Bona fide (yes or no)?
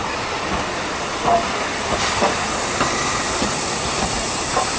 yes